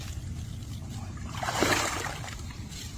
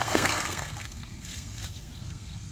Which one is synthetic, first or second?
second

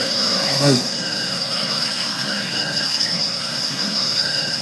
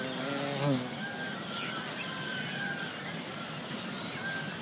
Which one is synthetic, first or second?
first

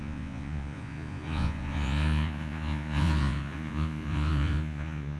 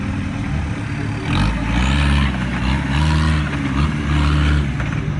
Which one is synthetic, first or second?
first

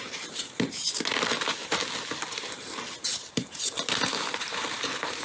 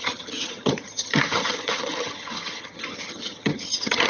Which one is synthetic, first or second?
second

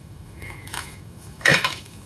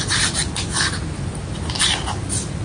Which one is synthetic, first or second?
first